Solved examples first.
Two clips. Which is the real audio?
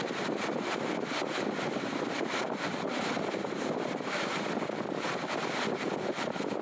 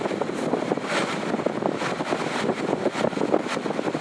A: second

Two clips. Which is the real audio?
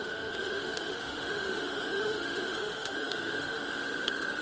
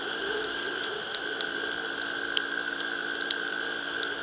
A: second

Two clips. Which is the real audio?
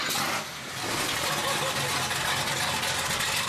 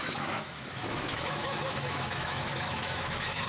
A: first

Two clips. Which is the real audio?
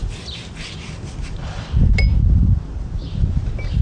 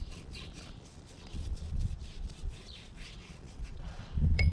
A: first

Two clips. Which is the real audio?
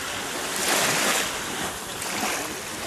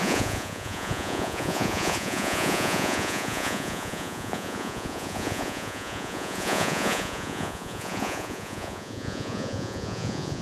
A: first